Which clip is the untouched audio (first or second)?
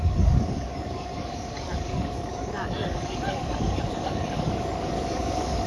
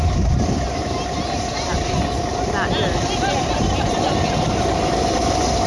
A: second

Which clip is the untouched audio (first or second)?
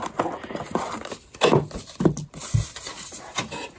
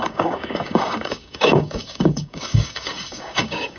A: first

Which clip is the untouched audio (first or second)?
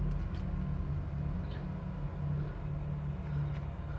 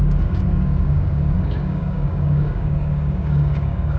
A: first